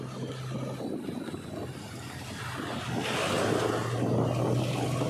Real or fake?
real